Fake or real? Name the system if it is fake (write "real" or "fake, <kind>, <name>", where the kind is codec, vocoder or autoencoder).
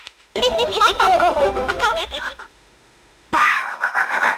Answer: fake, autoencoder, DAC-VAE